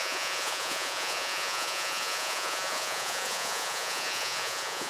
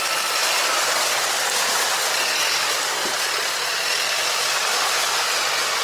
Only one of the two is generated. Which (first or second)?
first